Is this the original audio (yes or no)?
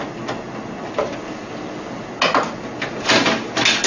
yes